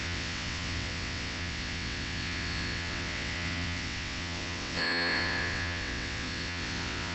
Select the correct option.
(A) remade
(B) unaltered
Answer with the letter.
A